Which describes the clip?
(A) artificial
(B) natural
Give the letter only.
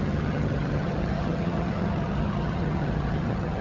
A